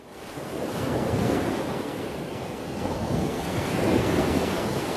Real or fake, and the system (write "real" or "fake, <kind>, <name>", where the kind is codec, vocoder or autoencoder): fake, codec, SNAC